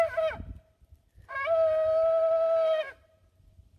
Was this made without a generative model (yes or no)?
yes